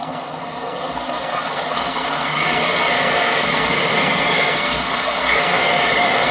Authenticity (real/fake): fake